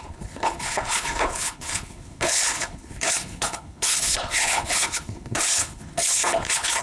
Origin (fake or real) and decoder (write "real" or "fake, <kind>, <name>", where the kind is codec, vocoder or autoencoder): fake, codec, HILCodec